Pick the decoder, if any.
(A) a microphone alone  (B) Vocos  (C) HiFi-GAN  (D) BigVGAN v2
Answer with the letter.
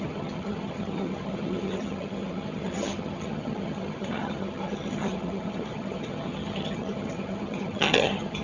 C